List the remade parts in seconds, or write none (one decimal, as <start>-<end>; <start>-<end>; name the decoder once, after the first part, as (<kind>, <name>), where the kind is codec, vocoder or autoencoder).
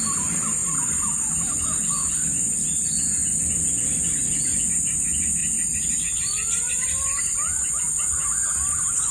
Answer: 0.6-1.1 (vocoder, BigVGAN v2); 5.4-7.7